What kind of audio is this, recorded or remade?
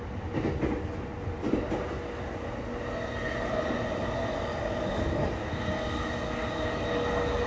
recorded